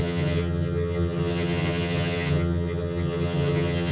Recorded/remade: remade